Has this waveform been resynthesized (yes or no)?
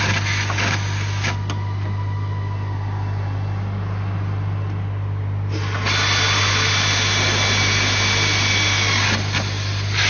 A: no